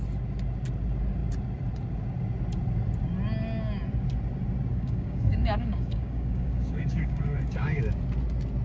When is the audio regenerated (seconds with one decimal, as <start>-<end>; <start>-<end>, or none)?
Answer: 4.7-7.8